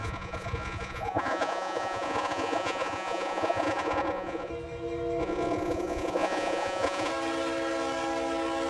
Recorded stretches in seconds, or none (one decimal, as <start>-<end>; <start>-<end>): 4.5-5.2; 7.1-8.7